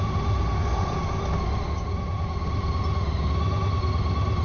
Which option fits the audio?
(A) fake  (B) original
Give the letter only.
B